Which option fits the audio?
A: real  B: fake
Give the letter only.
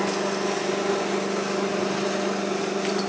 A